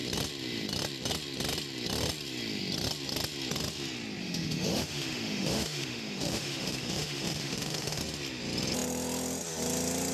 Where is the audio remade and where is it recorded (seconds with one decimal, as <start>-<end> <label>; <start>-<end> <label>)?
0.0-4.2 recorded; 4.2-8.0 remade; 8.0-10.1 recorded